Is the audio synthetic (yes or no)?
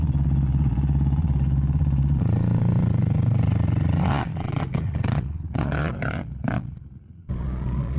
yes